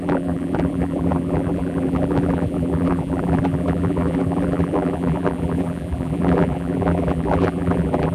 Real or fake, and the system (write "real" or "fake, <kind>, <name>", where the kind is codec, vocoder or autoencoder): fake, vocoder, BigVGAN v2